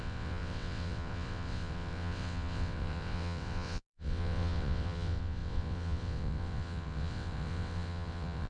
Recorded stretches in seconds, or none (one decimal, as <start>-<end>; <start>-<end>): none